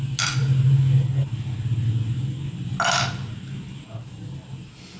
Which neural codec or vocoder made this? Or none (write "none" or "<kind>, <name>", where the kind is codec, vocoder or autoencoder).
none